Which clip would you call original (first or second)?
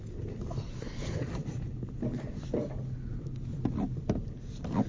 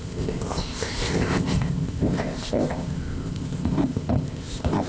first